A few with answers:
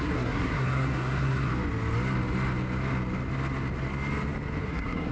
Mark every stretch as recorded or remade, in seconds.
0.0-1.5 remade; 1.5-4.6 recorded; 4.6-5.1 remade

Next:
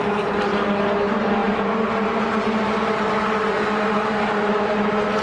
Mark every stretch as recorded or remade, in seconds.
0.0-5.2 recorded